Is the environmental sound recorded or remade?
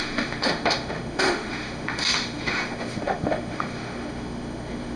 remade